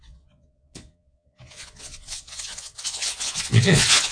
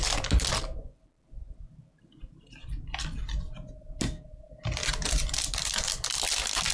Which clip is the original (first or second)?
second